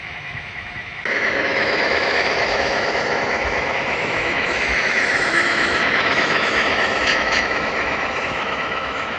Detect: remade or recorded remade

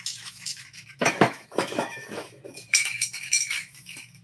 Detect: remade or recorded remade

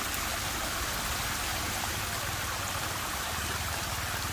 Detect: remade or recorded recorded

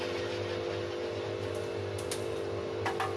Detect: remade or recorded recorded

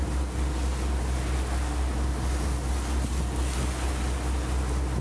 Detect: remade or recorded recorded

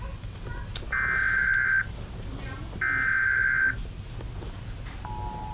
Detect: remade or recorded recorded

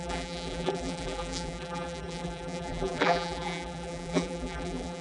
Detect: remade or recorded remade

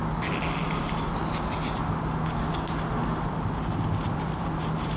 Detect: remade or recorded recorded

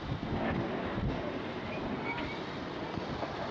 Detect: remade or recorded recorded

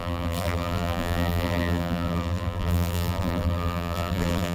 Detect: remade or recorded remade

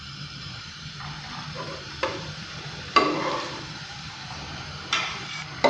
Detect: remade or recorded remade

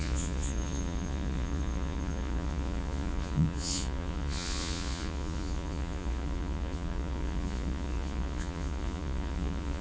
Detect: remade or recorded remade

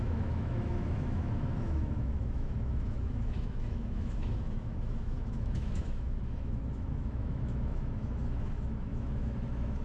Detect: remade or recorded remade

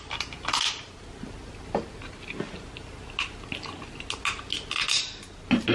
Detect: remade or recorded recorded